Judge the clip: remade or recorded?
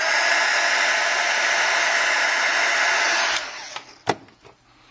recorded